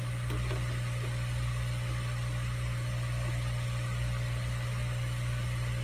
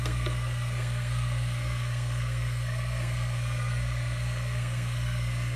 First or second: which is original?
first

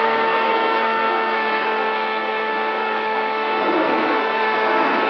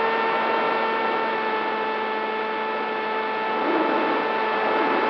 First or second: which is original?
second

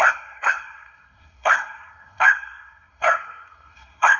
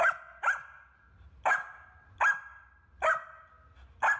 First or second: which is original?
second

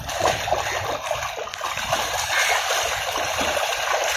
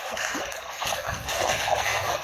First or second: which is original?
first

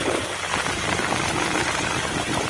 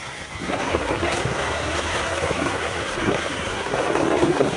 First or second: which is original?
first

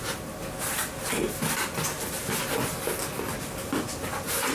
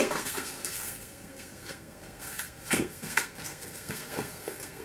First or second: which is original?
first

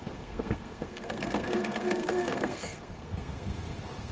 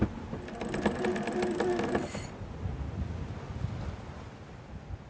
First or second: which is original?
second